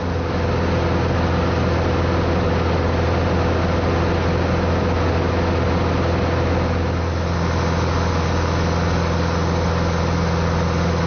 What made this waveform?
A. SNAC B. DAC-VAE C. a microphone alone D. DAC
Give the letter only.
C